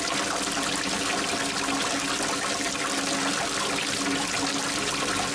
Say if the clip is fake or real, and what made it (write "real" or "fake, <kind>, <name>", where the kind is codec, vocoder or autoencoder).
real